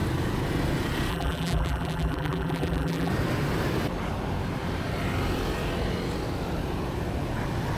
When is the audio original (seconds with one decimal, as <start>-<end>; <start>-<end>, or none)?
0.0-1.1; 3.1-7.8